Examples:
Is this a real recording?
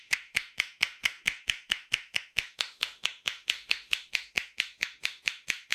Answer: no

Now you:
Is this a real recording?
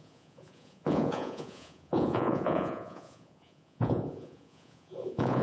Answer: no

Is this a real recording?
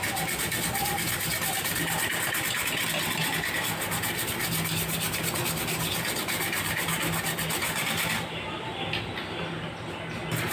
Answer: yes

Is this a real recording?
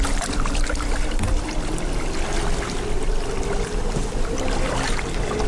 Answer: yes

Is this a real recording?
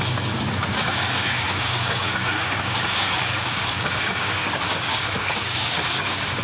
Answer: no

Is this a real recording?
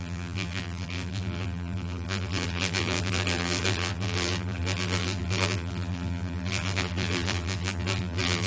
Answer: no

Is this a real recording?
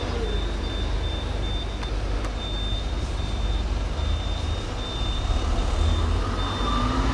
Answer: yes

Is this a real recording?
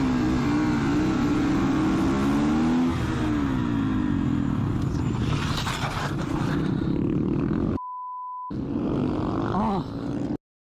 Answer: yes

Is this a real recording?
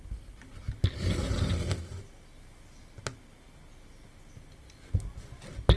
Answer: yes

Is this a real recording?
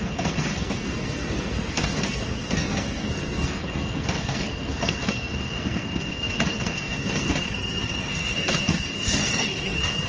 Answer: no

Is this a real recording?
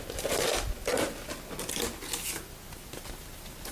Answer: yes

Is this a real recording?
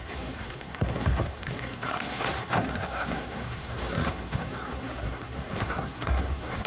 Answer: no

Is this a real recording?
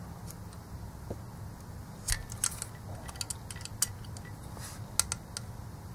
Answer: yes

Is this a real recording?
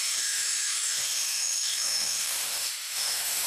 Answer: no